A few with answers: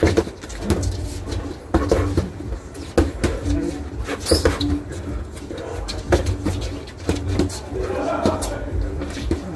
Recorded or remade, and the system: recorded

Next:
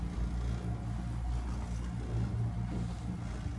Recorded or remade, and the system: recorded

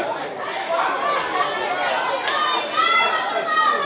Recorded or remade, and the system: recorded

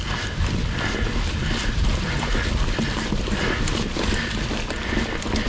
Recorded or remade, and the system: recorded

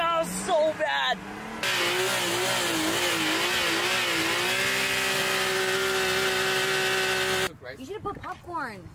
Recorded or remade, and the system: recorded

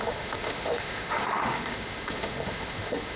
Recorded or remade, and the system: remade, autoencoder, DAC-VAE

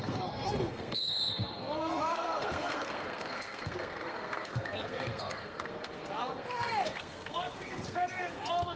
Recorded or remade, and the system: remade, codec, SNAC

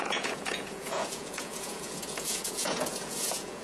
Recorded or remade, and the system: remade, vocoder, Vocos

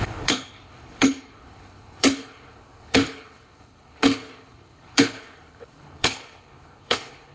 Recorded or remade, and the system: remade, codec, HILCodec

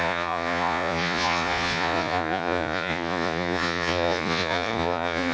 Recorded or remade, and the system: remade, vocoder, Vocos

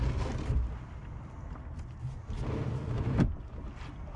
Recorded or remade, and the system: recorded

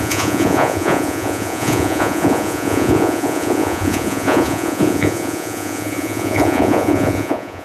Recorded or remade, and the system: remade, vocoder, Vocos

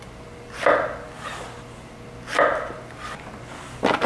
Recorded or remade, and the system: recorded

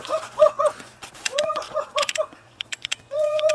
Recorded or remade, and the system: remade, vocoder, Vocos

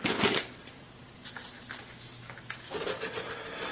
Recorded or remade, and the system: recorded